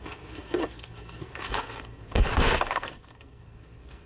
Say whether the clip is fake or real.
fake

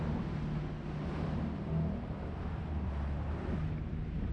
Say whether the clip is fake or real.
real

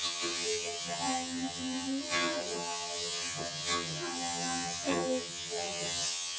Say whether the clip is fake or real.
fake